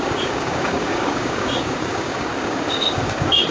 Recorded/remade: remade